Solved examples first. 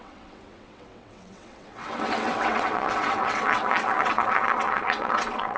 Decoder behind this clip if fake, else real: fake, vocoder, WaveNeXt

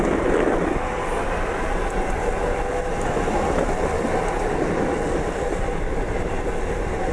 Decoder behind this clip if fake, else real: real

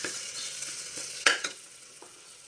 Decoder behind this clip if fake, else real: fake, vocoder, WaveNeXt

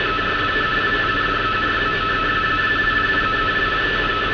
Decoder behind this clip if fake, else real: real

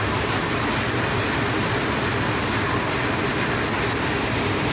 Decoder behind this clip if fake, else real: real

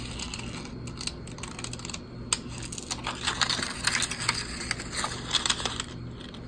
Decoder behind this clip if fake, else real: real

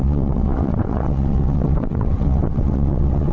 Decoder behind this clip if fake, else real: fake, vocoder, WaveNeXt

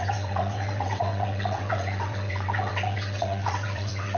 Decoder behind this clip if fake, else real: fake, vocoder, WaveNeXt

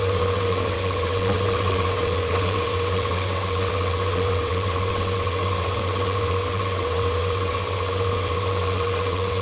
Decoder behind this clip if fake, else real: fake, vocoder, WaveNeXt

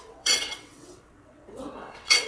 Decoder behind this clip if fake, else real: fake, vocoder, WaveNeXt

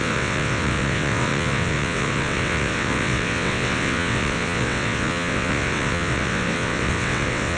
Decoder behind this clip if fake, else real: fake, vocoder, WaveNeXt